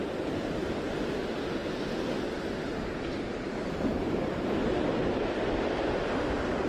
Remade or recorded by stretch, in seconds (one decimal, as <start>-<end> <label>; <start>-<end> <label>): 0.0-6.7 recorded